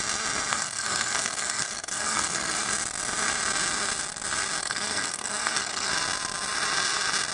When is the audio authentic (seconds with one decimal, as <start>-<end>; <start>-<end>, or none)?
0.0-0.5; 2.7-4.6; 5.9-7.3